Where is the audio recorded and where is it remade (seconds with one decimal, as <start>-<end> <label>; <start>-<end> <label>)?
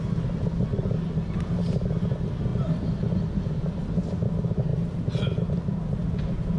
0.0-6.6 recorded